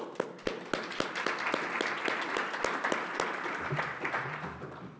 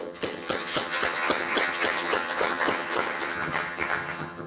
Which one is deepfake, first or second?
second